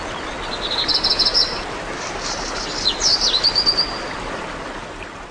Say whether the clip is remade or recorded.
recorded